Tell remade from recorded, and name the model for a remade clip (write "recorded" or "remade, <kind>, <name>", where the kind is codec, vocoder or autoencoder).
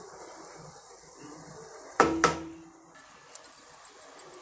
recorded